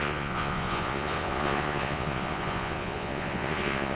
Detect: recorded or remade remade